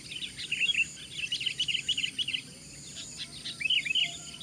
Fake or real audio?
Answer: real